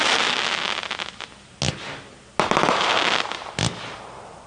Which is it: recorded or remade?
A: recorded